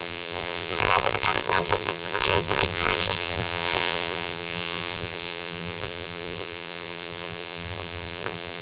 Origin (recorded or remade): remade